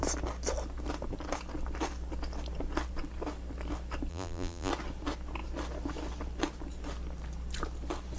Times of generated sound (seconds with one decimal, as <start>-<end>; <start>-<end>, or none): 4.1-4.7